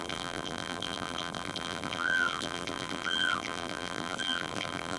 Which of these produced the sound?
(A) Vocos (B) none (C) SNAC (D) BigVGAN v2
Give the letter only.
D